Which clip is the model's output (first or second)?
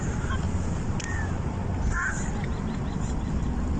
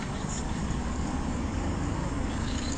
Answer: second